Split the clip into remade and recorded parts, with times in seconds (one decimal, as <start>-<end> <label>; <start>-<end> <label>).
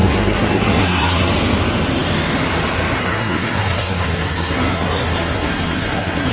0.0-1.3 remade; 1.3-3.0 recorded; 3.0-6.3 remade